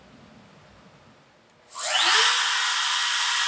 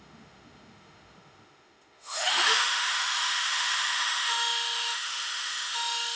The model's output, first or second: second